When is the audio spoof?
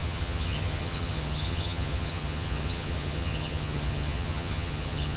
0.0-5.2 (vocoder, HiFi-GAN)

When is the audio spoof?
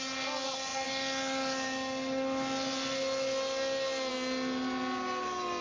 none